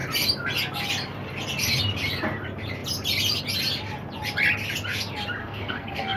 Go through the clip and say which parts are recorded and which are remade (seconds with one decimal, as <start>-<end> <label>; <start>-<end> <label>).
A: 0.0-5.4 recorded; 5.4-6.2 remade